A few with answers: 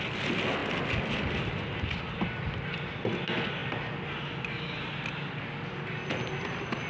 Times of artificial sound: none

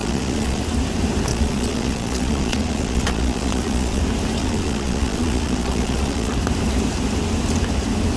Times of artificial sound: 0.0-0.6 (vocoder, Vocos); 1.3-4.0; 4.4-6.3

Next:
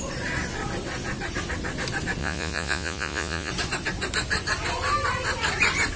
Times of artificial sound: 2.2-3.5 (vocoder, Vocos)

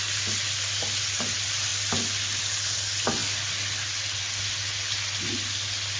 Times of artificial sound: none

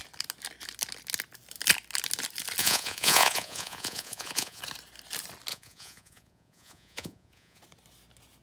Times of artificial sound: 2.6-4.6 (vocoder, Vocos); 5.5-7.6

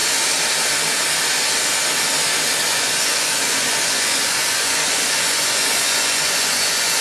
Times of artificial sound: 2.7-7.0 (vocoder, Vocos)

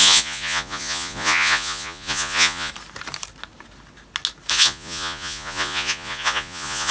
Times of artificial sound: 0.0-2.7 (vocoder, Vocos); 4.5-6.9